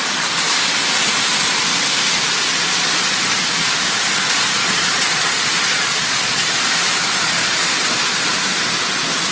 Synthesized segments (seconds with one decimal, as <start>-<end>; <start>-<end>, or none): 2.5-3.2; 4.6-6.5